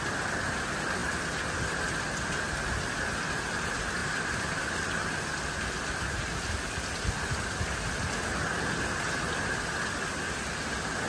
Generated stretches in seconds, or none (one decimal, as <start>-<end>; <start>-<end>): 4.0-4.6